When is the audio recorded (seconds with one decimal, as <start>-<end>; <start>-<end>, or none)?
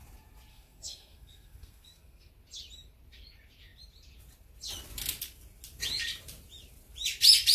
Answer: 0.0-0.5; 2.3-7.5